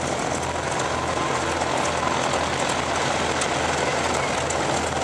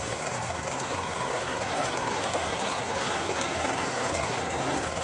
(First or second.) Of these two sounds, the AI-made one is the second